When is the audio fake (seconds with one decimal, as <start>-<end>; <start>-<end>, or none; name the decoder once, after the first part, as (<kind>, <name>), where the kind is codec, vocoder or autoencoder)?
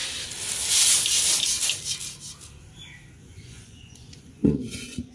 3.1-5.1 (vocoder, Vocos)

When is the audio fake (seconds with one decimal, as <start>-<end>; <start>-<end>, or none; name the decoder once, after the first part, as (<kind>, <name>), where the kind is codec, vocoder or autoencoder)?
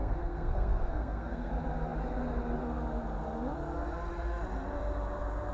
0.0-1.5 (codec, SNAC)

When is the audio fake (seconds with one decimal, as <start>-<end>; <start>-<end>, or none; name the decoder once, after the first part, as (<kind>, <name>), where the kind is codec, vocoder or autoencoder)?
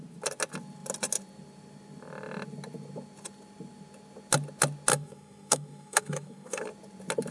4.9-6.6 (codec, SNAC)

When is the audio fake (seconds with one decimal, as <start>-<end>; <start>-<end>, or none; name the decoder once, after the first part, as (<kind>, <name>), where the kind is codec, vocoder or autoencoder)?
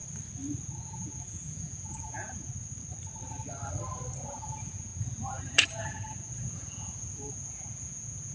0.8-2.5 (vocoder, Vocos); 4.2-8.3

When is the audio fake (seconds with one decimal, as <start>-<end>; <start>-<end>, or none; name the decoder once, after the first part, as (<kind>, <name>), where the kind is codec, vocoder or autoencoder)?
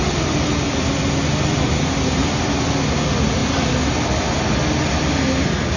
none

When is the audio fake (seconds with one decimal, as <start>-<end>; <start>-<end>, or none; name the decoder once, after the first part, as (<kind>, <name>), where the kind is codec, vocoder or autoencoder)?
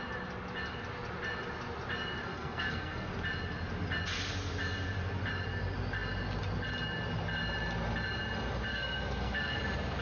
2.3-3.1 (codec, SNAC); 8.7-9.6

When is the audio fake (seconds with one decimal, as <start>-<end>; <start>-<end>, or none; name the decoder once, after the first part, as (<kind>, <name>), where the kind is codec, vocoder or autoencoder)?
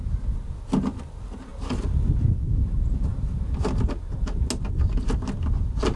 none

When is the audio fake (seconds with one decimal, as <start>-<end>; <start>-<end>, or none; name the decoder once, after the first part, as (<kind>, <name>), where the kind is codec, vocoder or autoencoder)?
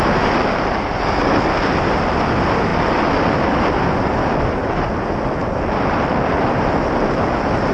none